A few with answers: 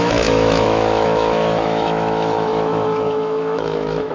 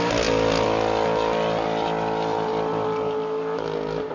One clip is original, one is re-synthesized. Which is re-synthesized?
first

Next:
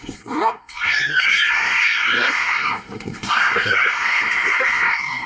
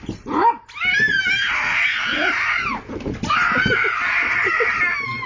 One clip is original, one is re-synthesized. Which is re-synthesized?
first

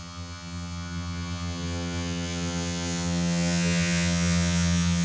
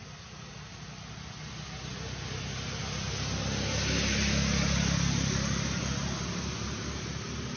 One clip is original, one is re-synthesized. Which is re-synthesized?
first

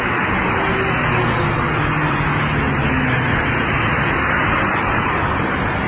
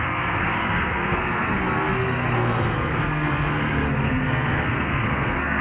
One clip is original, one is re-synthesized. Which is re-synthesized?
second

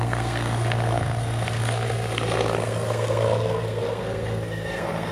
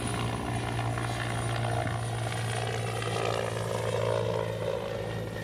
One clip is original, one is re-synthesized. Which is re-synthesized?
first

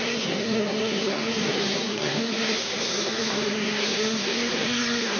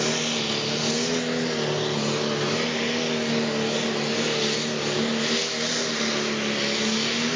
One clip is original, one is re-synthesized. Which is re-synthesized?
first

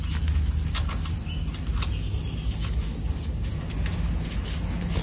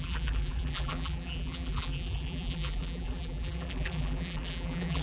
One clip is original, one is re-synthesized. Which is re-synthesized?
second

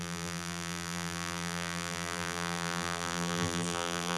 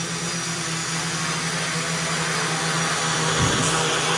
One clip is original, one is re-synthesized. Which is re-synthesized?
first